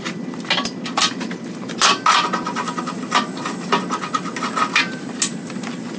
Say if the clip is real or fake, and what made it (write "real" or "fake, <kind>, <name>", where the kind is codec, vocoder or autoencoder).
real